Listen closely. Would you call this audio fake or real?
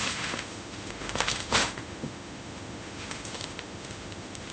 fake